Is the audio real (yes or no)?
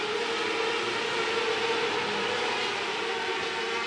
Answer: yes